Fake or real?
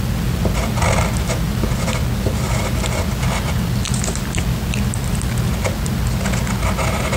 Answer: real